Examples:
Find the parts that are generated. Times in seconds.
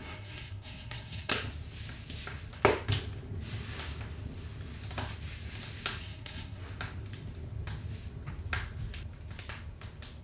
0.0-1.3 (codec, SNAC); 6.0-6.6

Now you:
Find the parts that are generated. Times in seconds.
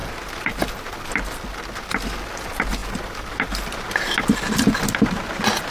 none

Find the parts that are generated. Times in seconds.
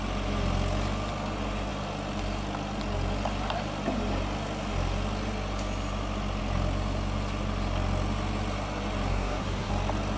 9.1-9.7 (codec, SNAC)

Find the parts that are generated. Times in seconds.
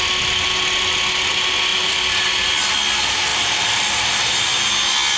1.7-2.5 (vocoder, BigVGAN v2); 3.3-4.1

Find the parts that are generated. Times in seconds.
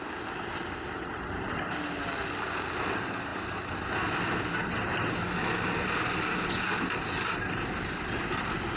none